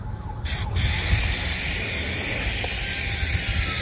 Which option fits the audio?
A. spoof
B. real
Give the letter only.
B